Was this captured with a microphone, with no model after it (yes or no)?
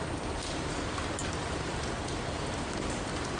yes